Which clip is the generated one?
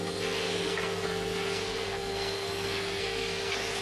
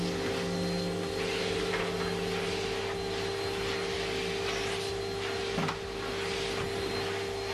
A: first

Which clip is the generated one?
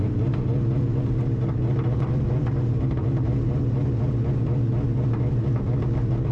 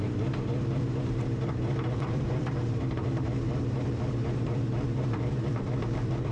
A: second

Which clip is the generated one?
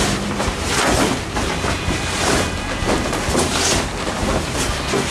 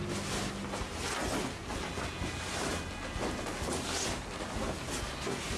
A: first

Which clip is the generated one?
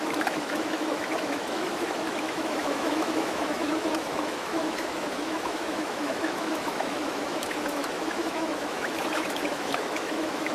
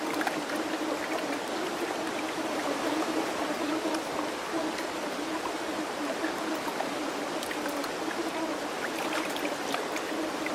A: first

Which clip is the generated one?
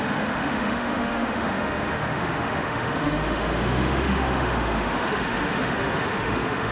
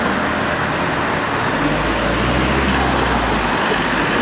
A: first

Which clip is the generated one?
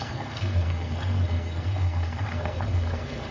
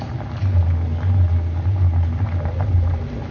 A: first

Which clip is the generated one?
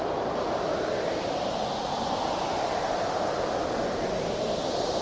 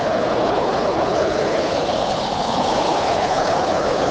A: second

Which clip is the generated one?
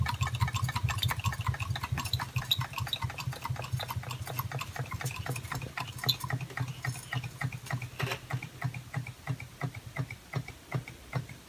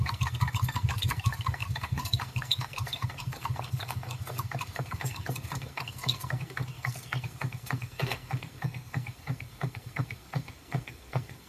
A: second